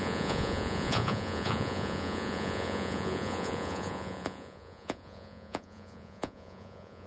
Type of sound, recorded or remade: remade